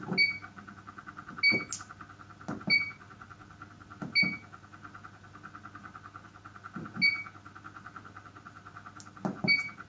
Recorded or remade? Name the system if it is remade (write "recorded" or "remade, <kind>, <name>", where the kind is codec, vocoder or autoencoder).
recorded